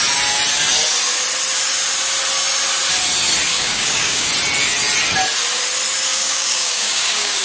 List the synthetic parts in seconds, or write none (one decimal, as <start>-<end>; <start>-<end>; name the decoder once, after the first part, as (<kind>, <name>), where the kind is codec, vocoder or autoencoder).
3.5-4.3 (codec, DAC); 6.1-7.4